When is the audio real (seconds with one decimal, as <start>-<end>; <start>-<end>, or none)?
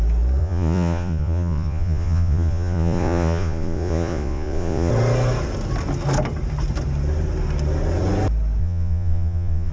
0.0-0.4; 4.9-8.6